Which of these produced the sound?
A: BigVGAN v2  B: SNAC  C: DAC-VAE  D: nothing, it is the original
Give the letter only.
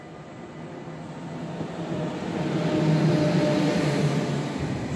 D